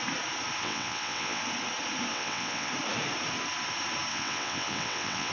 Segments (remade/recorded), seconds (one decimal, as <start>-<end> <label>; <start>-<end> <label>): 0.0-0.6 recorded; 0.6-1.4 remade; 1.4-2.1 recorded; 2.1-2.7 remade; 2.7-4.1 recorded; 4.1-5.3 remade